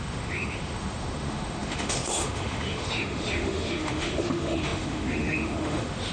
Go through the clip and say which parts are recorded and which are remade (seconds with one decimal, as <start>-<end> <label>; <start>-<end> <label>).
0.0-6.1 remade